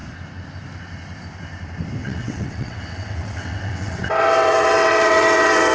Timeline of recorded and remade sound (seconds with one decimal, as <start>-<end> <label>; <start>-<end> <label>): 0.0-2.0 recorded; 2.0-5.7 remade